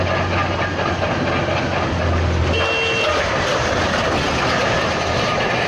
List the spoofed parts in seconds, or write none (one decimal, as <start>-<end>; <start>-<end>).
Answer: none